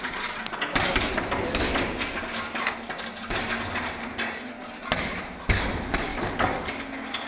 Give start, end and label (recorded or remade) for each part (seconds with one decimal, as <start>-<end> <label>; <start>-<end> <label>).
0.0-6.1 recorded; 6.1-6.8 remade; 6.8-7.3 recorded